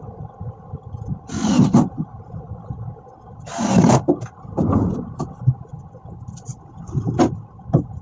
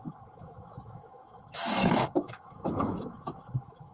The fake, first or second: second